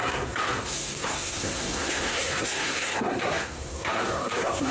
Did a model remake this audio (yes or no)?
yes